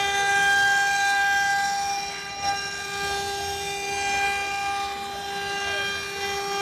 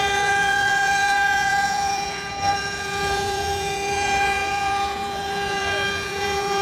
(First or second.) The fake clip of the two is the second